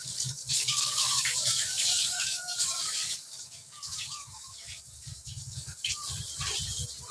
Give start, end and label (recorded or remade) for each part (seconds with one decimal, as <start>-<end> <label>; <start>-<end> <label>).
0.0-6.0 remade; 6.0-7.1 recorded

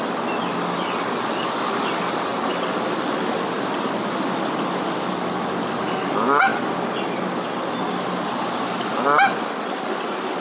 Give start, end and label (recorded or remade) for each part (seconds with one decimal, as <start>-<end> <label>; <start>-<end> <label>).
0.0-10.4 recorded

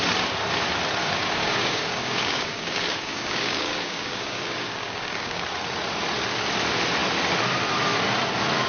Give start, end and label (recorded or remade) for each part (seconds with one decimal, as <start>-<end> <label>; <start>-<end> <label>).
0.0-1.0 recorded; 1.0-5.4 remade; 5.4-8.7 recorded

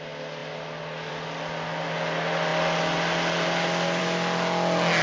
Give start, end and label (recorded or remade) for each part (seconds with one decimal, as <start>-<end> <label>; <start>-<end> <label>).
0.0-5.0 recorded

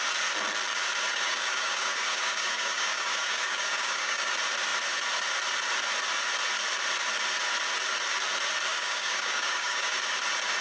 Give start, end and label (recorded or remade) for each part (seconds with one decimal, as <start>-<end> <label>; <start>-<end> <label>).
0.0-1.1 recorded; 1.1-4.3 remade; 4.3-8.7 recorded; 8.7-10.0 remade; 10.0-10.6 recorded

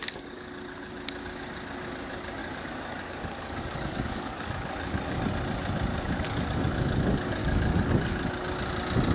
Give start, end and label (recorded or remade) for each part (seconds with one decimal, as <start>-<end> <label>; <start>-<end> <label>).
0.0-0.5 remade; 0.5-2.4 recorded; 2.4-5.3 remade; 5.3-5.9 recorded; 5.9-6.5 remade; 6.5-7.4 recorded; 7.4-7.9 remade; 7.9-9.1 recorded